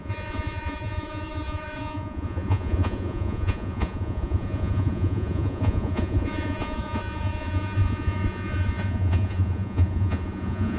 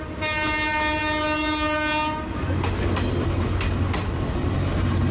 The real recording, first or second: second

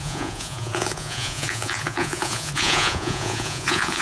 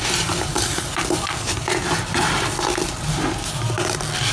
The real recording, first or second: second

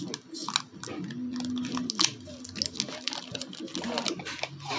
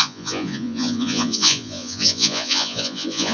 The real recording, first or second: first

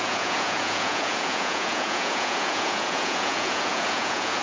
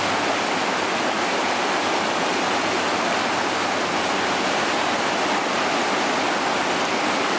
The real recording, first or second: second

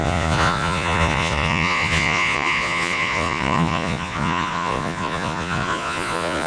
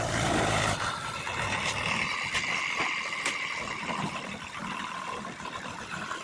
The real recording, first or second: second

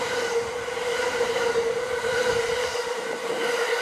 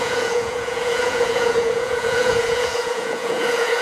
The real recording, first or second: first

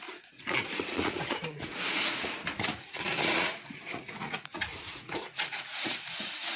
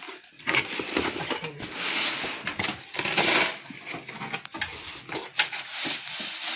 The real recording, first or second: second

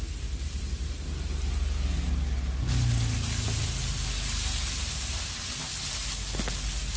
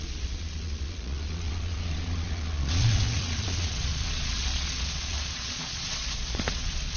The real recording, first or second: first